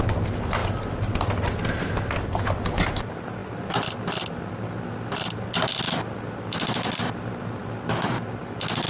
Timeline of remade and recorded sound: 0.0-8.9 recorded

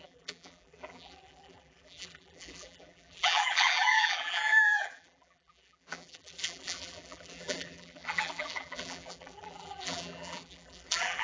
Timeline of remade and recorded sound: 0.0-11.2 remade

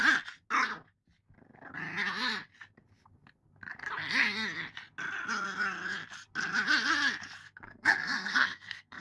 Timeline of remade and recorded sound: 0.0-7.4 recorded; 7.4-9.0 remade